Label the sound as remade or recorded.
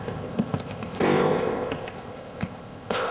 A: remade